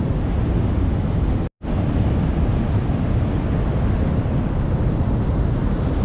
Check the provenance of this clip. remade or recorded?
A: recorded